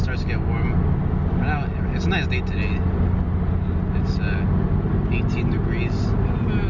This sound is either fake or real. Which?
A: real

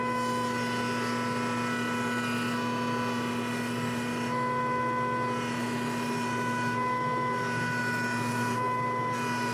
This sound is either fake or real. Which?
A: real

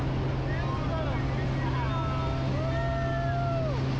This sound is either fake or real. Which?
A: real